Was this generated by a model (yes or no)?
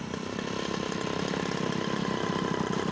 no